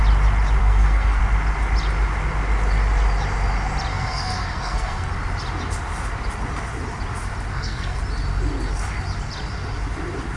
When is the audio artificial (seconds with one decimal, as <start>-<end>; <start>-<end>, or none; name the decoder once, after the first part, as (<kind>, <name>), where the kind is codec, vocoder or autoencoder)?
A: 0.6-1.2 (codec, SNAC); 3.9-5.1; 7.5-8.0